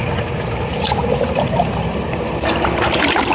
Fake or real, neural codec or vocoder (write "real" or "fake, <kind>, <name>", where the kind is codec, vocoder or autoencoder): fake, vocoder, BigVGAN v2